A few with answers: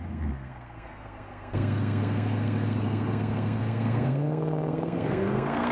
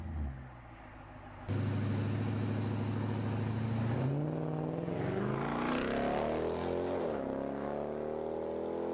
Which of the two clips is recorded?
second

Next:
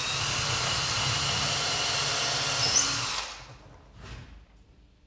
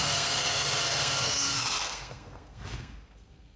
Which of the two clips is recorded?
first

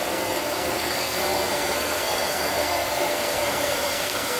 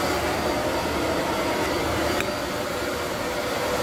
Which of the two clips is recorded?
second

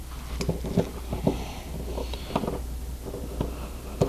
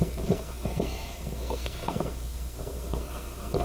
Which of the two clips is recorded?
first